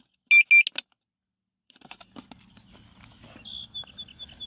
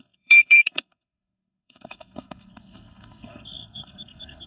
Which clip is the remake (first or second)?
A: second